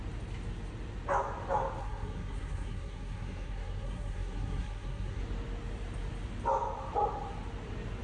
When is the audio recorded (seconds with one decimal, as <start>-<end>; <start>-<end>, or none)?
0.0-1.8; 5.2-8.0